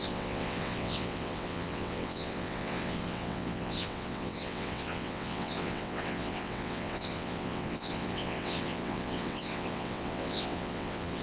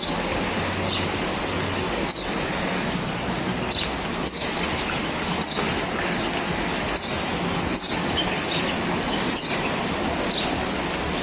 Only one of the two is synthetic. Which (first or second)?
first